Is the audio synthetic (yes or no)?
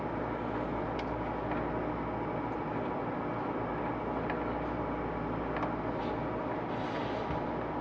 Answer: no